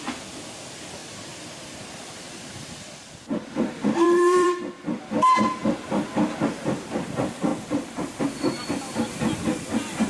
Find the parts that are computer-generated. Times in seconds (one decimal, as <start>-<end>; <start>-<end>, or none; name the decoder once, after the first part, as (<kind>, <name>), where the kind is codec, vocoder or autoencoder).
1.0-4.7 (vocoder, BigVGAN v2); 7.5-8.2